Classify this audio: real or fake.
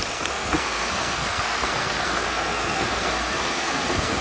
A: fake